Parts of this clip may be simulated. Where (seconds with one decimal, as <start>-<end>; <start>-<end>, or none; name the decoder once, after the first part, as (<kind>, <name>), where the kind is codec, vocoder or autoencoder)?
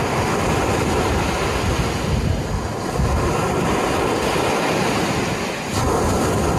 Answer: none